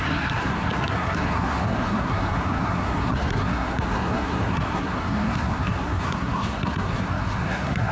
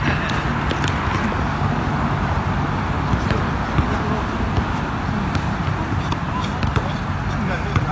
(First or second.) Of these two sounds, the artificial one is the first